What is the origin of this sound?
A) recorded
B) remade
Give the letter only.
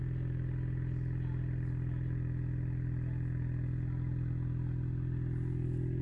A